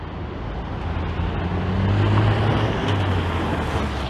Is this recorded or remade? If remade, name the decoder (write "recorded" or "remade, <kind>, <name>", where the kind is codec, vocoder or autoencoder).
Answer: recorded